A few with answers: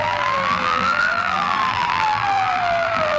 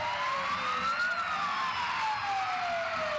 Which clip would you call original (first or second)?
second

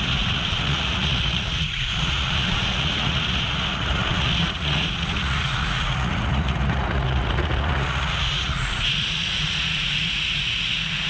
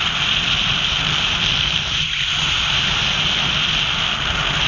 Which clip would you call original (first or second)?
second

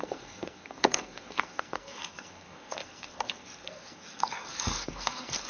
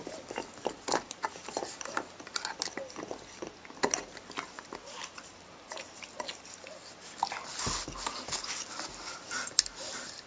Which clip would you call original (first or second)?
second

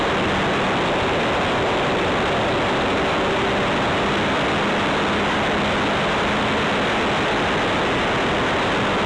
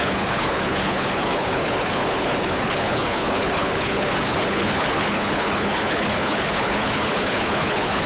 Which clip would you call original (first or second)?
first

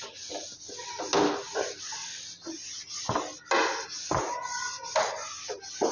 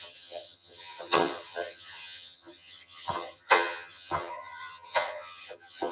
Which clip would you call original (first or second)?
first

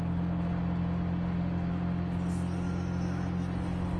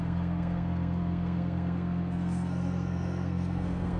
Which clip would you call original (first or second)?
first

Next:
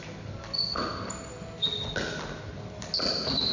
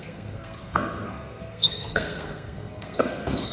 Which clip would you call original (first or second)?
first